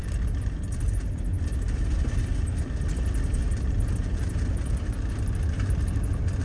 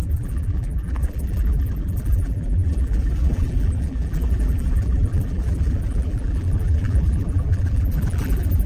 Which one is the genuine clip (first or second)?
first